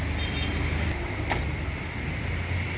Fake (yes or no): no